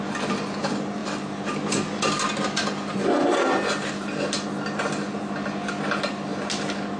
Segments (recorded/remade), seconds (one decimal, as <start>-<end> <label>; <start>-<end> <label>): 0.0-7.0 recorded